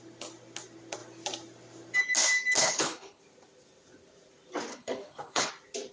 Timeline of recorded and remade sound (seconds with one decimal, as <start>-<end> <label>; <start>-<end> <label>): 0.0-2.6 recorded; 2.6-3.2 remade; 3.2-4.7 recorded; 4.7-5.5 remade; 5.5-5.9 recorded